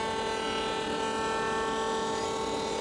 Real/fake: real